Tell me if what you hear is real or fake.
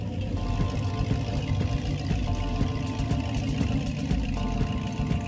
real